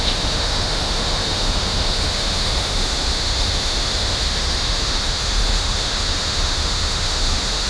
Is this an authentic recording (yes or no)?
no